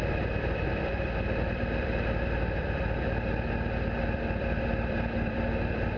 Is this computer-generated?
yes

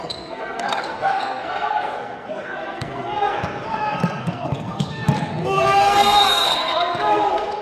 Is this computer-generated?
yes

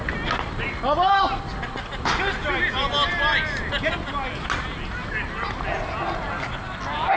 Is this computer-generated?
no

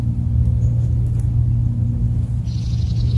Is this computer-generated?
no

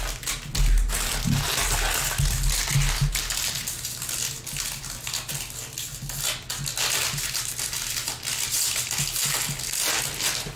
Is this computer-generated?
no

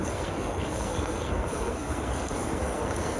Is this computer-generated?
yes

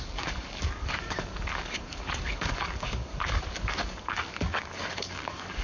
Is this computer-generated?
yes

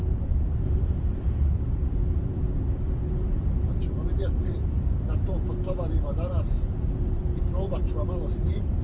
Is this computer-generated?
yes